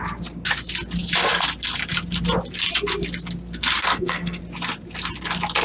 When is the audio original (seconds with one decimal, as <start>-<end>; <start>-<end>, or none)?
0.0-3.8; 4.4-5.6